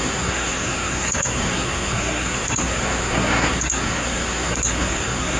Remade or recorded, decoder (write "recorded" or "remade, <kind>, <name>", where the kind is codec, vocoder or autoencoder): remade, codec, SNAC